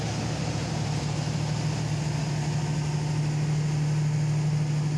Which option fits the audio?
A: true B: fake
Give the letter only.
A